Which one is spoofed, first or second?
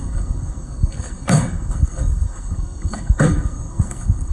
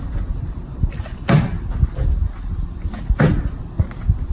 first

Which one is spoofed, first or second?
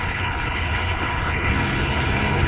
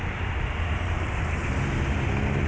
first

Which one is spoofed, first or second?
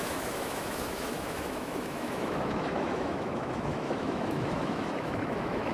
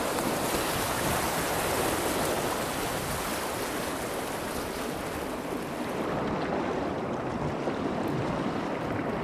first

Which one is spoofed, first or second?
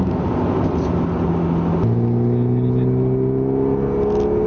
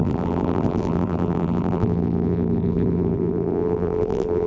second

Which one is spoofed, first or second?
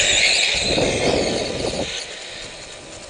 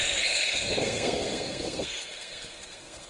second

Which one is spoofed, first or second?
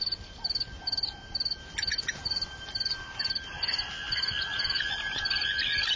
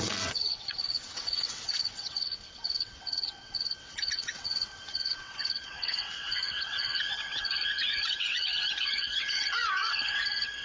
second